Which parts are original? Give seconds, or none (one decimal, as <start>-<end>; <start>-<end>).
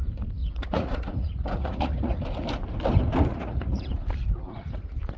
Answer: 0.0-0.4; 2.2-3.3; 3.9-5.2